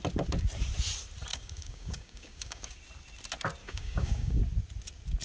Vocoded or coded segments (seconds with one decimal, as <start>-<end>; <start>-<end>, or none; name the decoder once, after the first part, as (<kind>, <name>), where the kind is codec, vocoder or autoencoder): 1.3-2.8 (codec, DAC); 3.6-4.4